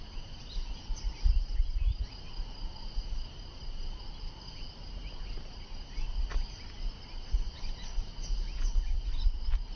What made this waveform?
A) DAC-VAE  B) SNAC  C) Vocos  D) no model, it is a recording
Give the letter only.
D